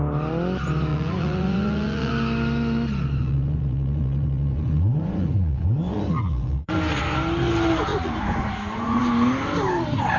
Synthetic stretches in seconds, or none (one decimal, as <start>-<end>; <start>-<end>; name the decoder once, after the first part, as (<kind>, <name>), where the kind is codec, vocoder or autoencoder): 0.9-2.1 (vocoder, Vocos); 3.2-6.7; 7.9-9.0